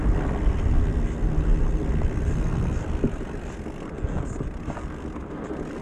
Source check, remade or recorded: recorded